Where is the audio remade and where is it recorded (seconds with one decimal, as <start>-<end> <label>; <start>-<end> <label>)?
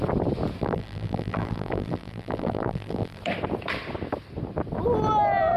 0.0-0.6 recorded; 0.6-3.2 remade; 3.2-5.6 recorded